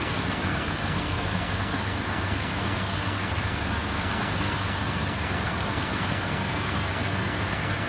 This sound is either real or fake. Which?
fake